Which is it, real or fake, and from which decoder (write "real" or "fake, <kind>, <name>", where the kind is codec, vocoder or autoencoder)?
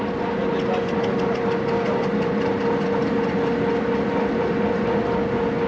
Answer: real